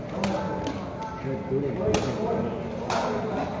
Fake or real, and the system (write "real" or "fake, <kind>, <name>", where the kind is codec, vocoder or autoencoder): real